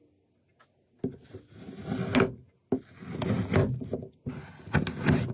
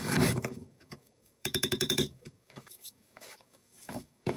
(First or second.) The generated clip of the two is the second